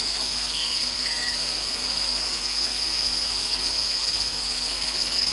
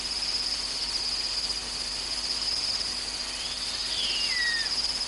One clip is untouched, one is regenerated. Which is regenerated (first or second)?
first